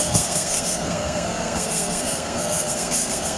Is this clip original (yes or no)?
no